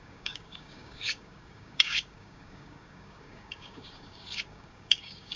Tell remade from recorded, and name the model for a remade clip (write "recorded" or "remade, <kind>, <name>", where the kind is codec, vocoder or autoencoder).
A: remade, codec, DAC